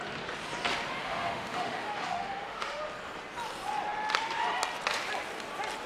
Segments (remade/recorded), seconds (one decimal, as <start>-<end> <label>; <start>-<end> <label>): 0.0-1.0 recorded; 1.0-2.8 remade; 2.8-5.9 recorded